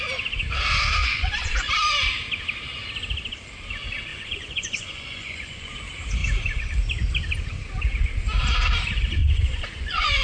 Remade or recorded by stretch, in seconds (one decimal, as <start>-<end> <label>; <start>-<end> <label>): 0.0-1.0 recorded; 1.0-1.7 remade; 1.7-4.1 recorded; 4.1-5.7 remade; 5.7-9.2 recorded; 9.2-10.2 remade